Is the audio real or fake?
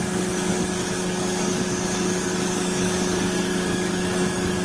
fake